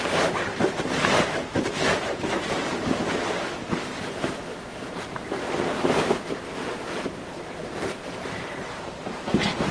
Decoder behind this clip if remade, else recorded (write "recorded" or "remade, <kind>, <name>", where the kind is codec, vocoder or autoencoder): remade, vocoder, BigVGAN v2